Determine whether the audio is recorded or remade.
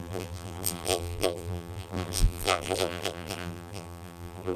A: remade